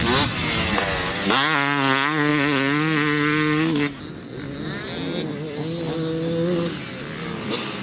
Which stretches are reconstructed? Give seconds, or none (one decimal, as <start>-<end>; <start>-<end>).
none